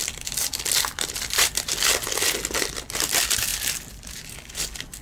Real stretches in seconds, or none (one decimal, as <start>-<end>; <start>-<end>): 1.5-3.5; 4.1-5.0